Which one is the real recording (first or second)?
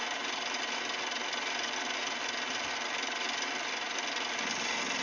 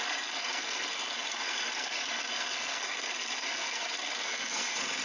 first